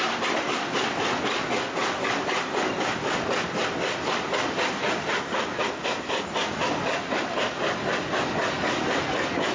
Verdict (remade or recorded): recorded